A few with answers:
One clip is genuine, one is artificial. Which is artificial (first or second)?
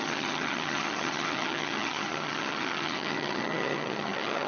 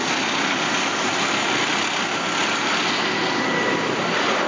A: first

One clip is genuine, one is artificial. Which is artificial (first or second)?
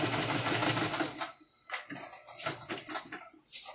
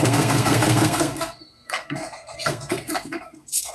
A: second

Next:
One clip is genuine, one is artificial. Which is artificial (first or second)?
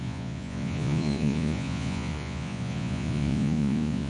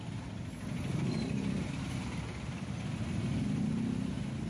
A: first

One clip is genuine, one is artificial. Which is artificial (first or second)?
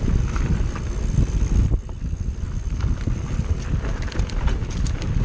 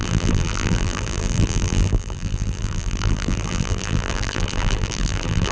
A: second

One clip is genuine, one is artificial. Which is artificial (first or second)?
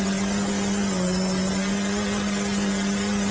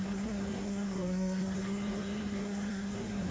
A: second